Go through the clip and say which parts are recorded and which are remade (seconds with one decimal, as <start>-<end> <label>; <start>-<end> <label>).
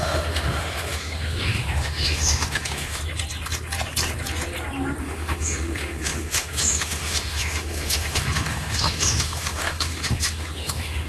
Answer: 0.0-3.0 remade; 3.0-5.0 recorded; 5.0-11.1 remade